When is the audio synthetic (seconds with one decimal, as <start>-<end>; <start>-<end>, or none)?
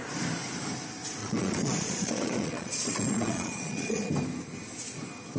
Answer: 1.2-4.1